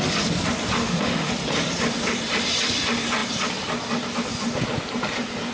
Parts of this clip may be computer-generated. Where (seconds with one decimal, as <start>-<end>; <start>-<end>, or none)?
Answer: 0.8-1.3